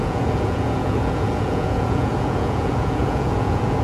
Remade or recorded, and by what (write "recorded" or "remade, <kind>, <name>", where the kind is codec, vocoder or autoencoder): remade, vocoder, Vocos